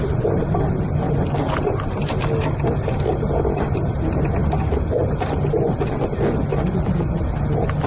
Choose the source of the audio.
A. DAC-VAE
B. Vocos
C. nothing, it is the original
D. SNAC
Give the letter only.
C